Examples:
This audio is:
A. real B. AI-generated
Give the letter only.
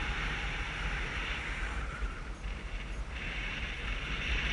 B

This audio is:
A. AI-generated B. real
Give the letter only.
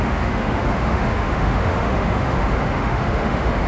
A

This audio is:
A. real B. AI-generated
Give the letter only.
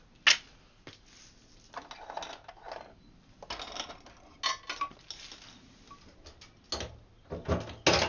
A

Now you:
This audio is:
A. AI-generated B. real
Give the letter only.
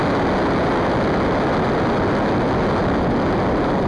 B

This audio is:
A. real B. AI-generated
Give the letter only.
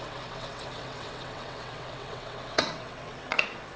B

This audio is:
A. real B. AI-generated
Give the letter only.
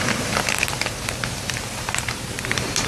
B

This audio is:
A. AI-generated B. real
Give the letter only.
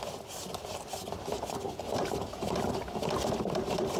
B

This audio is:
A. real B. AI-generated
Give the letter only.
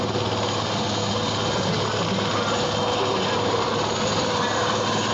A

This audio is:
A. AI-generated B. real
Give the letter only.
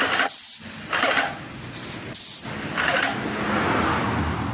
B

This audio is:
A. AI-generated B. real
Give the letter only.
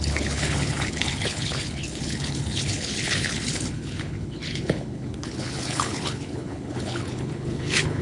A